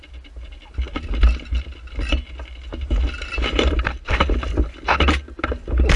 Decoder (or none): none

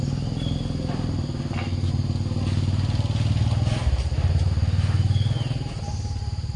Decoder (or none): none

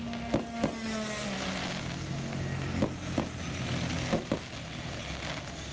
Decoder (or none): none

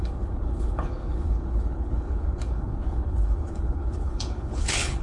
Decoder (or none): codec, HILCodec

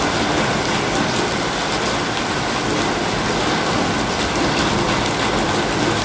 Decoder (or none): none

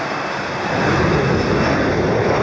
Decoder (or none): none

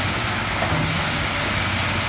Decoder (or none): none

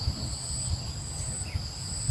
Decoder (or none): none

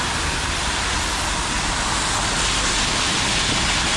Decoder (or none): none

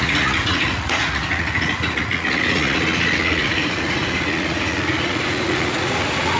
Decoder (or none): vocoder, Vocos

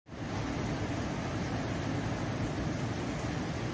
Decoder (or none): none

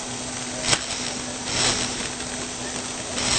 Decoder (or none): none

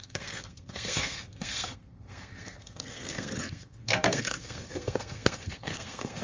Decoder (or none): codec, SNAC